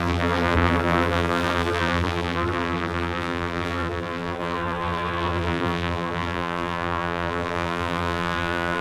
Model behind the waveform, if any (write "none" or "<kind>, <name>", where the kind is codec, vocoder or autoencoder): vocoder, BigVGAN v2